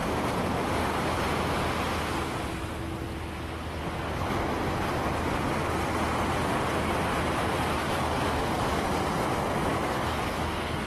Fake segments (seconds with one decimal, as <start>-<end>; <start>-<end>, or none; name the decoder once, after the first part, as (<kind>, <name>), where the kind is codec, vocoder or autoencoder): 7.8-8.4 (codec, DAC); 9.7-10.9